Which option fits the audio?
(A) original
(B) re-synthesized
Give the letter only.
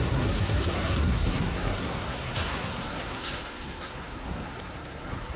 B